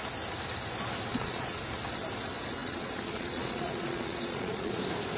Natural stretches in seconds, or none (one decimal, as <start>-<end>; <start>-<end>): 0.0-1.1; 1.6-2.6; 4.8-5.2